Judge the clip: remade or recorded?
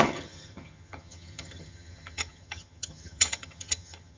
remade